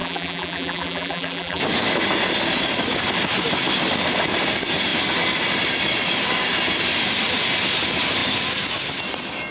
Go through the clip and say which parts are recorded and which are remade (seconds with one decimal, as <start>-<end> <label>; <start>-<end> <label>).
0.0-1.6 remade; 1.6-9.5 recorded